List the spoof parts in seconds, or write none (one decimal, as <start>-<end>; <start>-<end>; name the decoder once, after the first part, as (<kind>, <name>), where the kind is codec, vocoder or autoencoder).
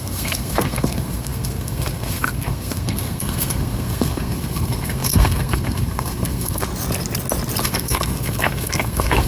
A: 0.0-6.7 (codec, SNAC); 7.6-9.3